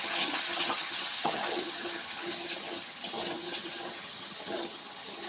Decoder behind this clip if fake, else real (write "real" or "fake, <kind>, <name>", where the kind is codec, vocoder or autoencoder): fake, vocoder, HiFi-GAN